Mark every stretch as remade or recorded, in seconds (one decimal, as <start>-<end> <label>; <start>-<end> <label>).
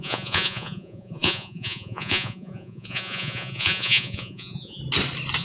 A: 0.0-4.8 remade; 4.8-5.4 recorded